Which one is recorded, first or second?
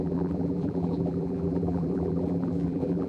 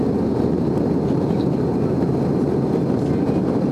second